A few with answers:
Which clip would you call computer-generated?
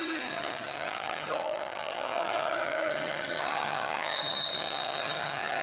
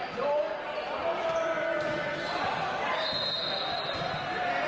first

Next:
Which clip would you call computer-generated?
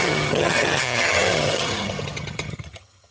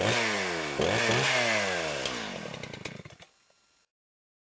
first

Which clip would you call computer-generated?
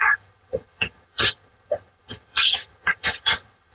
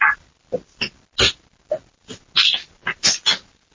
first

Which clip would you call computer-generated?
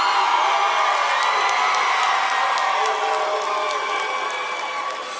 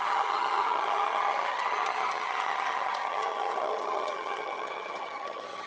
second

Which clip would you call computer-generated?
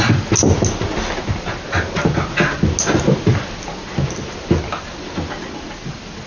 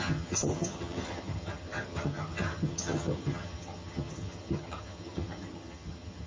second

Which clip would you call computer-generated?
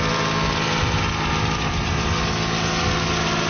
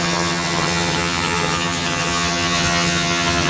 second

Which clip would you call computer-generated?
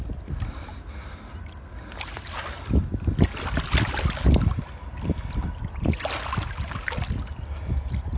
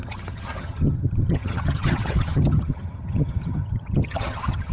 second